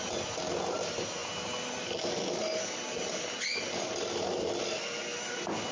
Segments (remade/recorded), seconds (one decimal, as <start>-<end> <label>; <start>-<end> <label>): 0.0-5.7 recorded